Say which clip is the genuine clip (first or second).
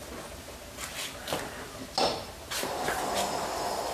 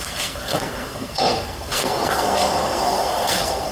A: first